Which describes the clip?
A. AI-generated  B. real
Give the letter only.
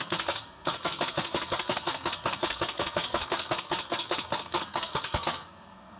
A